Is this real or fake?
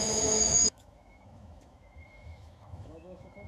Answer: fake